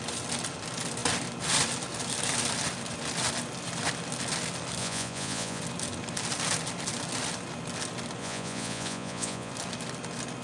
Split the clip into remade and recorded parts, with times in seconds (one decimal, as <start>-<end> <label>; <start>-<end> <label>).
0.0-4.8 recorded; 4.8-5.6 remade; 5.6-8.2 recorded; 8.2-9.5 remade; 9.5-10.4 recorded